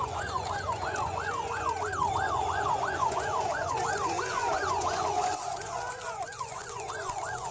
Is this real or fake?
fake